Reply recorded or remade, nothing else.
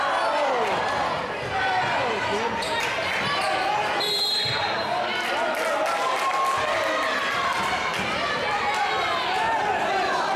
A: recorded